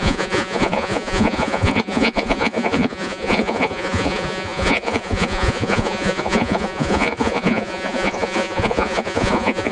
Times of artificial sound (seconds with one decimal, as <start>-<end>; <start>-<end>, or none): 0.0-9.7